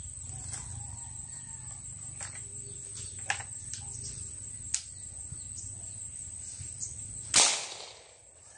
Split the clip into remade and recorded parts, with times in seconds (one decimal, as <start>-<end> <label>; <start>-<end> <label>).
0.0-8.6 recorded